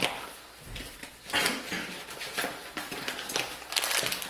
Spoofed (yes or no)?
no